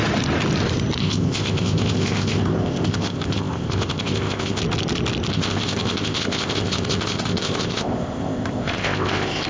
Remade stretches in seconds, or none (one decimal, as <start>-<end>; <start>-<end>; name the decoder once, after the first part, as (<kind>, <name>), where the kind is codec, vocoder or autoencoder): 1.0-4.6 (codec, ZipCodec); 5.3-9.5